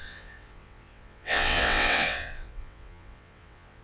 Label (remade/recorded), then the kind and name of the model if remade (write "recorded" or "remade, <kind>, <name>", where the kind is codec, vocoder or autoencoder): remade, vocoder, WaveNeXt